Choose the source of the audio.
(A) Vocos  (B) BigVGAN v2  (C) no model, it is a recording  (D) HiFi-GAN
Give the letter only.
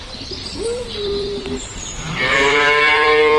B